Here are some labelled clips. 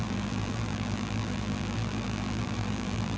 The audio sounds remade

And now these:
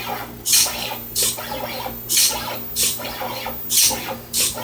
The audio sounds recorded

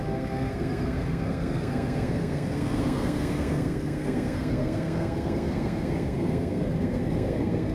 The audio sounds remade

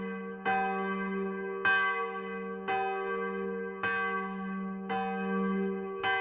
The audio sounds recorded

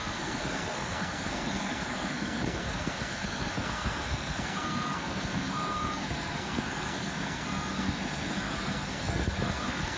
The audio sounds remade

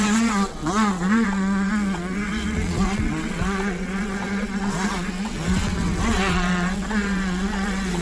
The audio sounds remade